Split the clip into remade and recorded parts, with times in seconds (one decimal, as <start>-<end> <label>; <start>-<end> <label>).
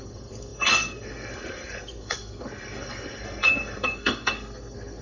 0.0-5.0 remade